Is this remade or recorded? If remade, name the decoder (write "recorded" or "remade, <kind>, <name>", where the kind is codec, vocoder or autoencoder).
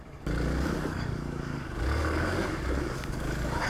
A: remade, codec, DAC